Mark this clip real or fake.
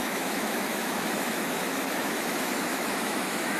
fake